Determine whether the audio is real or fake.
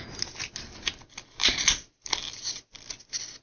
real